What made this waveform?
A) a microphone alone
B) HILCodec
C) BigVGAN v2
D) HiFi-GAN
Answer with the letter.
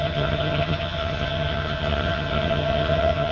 D